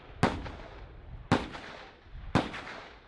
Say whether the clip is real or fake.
real